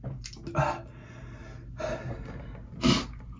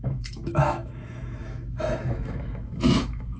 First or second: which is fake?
second